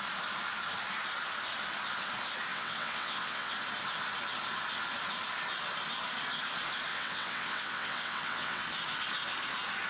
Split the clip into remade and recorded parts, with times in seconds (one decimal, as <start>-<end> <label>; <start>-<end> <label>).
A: 0.0-2.5 recorded; 2.5-3.5 remade; 3.5-6.9 recorded; 6.9-8.6 remade; 8.6-9.9 recorded